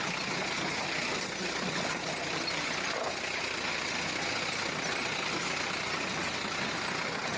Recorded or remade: recorded